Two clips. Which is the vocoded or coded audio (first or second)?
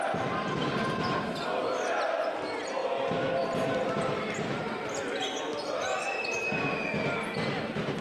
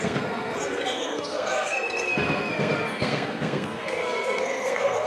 second